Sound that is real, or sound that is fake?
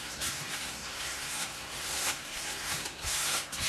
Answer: fake